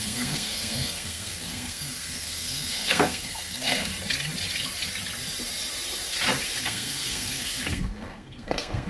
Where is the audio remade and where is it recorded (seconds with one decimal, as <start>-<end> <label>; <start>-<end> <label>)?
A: 0.0-3.9 remade; 3.9-6.6 recorded; 6.6-8.9 remade